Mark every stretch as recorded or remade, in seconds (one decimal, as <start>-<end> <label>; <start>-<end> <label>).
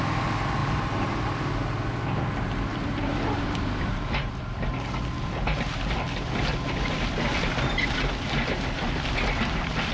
0.0-0.6 recorded; 0.6-1.4 remade; 1.4-2.7 recorded; 2.7-4.3 remade; 4.3-9.9 recorded